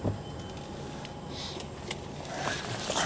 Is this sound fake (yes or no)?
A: no